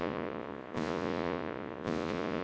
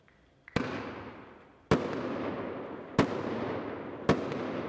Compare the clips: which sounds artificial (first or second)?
first